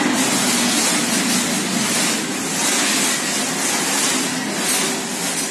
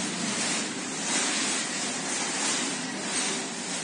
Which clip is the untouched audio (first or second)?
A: first